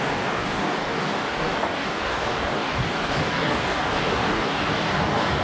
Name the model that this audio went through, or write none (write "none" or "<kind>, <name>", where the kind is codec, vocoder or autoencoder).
codec, DAC